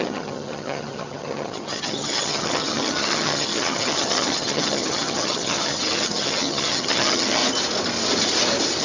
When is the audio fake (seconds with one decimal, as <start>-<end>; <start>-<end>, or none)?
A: 0.0-7.4